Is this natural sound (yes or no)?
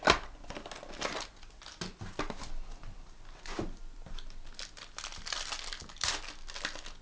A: yes